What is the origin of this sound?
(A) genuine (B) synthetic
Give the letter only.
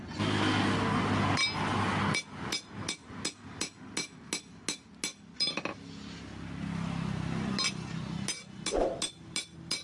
A